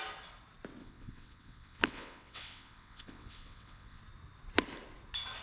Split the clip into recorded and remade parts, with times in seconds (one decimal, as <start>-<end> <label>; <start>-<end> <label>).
0.0-0.8 recorded; 0.8-4.0 remade; 4.0-5.4 recorded